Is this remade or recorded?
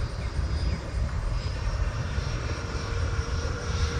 remade